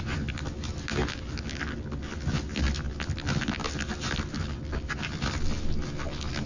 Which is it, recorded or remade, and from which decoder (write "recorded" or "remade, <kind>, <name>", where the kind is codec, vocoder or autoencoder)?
recorded